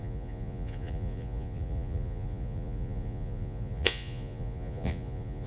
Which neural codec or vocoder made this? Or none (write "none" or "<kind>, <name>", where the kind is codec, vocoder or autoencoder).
vocoder, Vocos